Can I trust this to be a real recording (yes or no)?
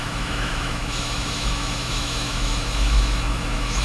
no